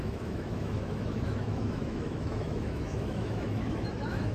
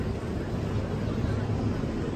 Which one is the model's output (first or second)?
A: first